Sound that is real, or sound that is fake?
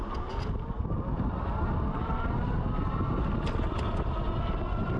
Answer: real